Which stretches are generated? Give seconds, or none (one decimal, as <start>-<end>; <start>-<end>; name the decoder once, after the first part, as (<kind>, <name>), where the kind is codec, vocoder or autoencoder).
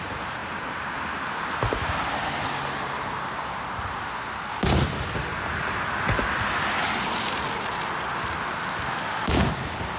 none